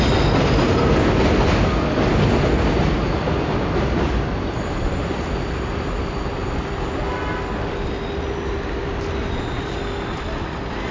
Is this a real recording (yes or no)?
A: yes